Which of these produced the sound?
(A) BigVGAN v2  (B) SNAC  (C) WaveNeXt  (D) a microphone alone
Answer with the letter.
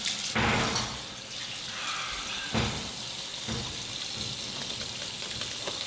D